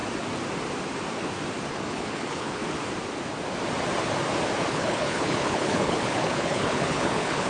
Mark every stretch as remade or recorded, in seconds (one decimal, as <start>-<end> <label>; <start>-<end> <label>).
0.0-1.7 recorded; 1.7-2.6 remade; 2.6-4.7 recorded; 4.7-7.5 remade